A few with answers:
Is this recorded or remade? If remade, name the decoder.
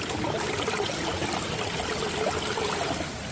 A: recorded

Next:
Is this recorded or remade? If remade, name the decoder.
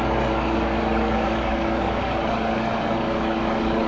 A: remade, codec, DAC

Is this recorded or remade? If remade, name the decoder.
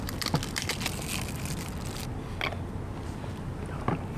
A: recorded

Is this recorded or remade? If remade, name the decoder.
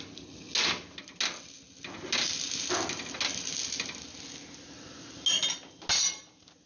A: recorded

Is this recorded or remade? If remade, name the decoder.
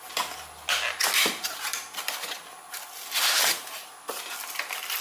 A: recorded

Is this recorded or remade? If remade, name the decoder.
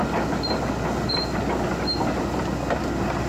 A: recorded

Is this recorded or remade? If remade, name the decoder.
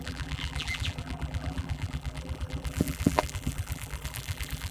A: remade, vocoder, BigVGAN v2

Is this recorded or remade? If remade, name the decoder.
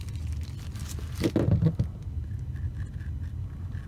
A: recorded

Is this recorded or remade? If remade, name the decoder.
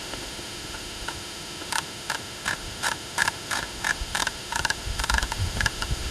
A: remade, autoencoder, DAC-VAE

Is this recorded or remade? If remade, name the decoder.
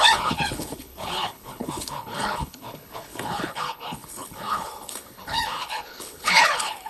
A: remade, codec, HILCodec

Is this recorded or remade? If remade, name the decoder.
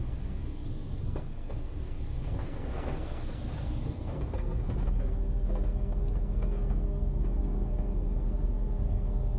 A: remade, codec, SNAC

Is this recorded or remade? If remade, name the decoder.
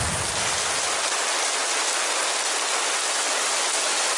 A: recorded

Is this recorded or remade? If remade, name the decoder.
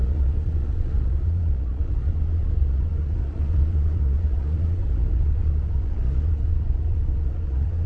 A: remade, vocoder, Vocos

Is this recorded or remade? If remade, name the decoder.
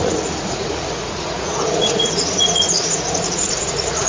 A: remade, vocoder, Vocos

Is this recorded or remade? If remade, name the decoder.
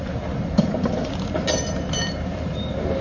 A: remade, vocoder, BigVGAN v2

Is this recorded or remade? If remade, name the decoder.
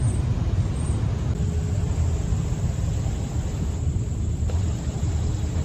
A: recorded